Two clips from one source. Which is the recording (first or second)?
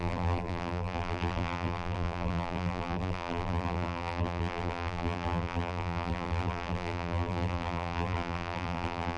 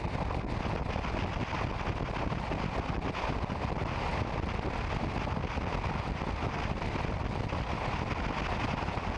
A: second